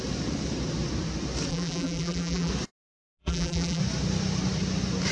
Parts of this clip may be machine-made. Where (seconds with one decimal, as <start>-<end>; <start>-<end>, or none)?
1.5-2.5; 3.2-3.8